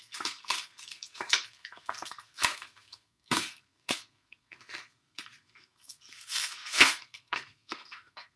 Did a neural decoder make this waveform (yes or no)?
yes